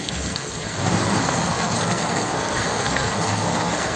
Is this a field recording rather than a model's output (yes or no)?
no